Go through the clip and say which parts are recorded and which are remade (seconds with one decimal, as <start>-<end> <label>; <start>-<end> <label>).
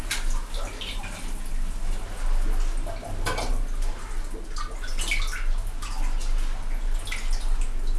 0.0-8.0 recorded